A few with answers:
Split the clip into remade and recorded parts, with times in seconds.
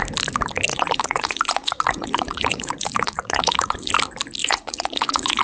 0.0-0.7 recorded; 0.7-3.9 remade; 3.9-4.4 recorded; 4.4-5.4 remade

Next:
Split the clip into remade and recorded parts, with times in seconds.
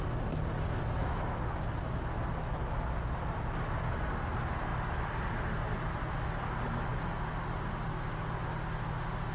0.0-9.3 recorded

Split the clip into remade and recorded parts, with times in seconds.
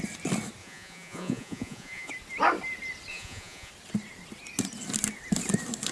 0.0-0.6 recorded; 0.6-2.1 remade; 2.1-3.1 recorded; 3.1-3.7 remade; 3.7-5.9 recorded